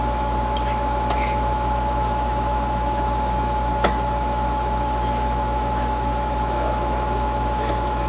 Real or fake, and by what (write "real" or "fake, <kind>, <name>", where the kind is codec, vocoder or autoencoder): fake, autoencoder, DAC-VAE